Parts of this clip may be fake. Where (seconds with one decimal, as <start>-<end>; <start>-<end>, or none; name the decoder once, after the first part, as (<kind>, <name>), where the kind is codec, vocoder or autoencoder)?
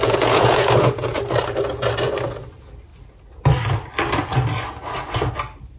0.0-1.2 (vocoder, Vocos)